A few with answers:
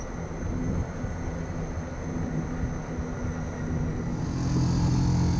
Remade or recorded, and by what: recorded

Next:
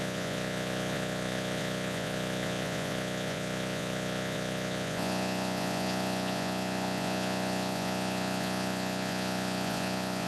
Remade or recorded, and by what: remade, vocoder, Vocos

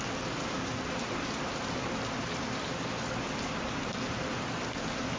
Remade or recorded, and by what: recorded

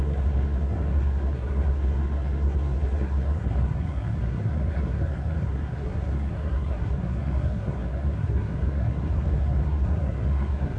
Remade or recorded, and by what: remade, codec, SNAC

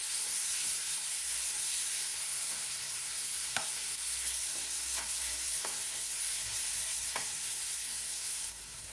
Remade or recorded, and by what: remade, codec, SNAC